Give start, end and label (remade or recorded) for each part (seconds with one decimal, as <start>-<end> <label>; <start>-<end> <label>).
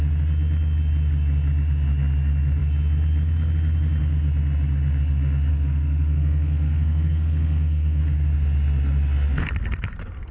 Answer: 0.0-5.5 recorded; 5.5-8.0 remade; 8.0-10.3 recorded